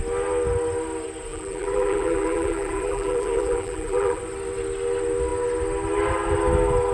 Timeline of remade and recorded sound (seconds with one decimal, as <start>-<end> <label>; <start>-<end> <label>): 0.0-1.3 recorded; 1.3-4.2 remade; 4.2-6.9 recorded